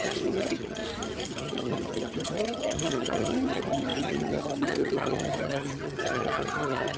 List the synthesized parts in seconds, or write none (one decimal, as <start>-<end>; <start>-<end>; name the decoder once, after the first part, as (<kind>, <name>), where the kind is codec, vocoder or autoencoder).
0.0-0.8 (vocoder, HiFi-GAN); 1.3-7.0